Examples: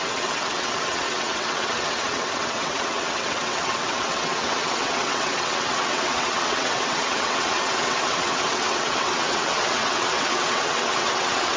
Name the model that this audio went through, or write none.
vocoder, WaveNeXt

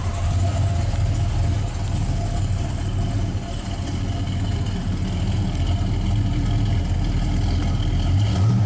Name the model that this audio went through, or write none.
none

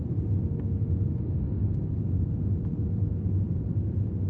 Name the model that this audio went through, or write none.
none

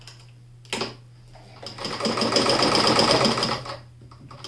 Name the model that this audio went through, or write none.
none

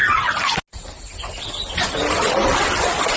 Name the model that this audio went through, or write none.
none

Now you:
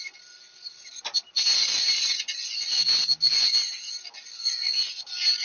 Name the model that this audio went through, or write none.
none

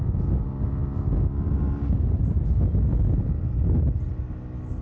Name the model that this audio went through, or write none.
none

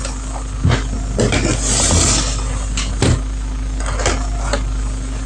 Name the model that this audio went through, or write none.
none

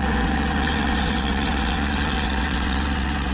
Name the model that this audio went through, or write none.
vocoder, WaveNeXt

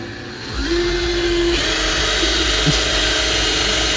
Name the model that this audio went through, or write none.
none